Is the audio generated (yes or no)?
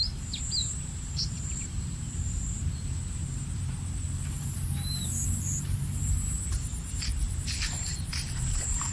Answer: yes